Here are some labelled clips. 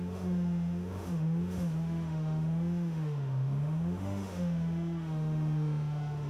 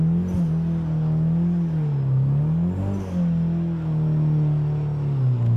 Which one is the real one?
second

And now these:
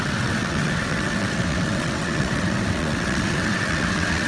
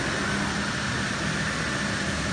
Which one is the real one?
second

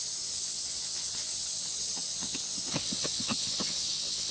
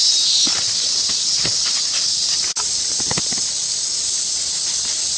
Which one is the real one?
second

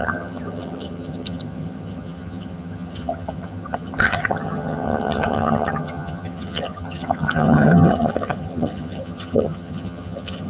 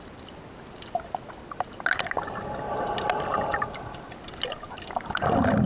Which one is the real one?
second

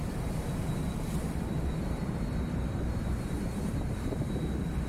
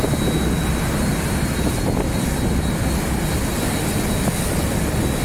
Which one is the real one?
second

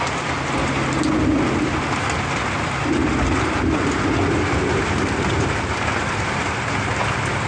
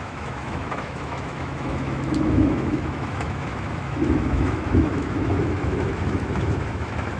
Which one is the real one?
first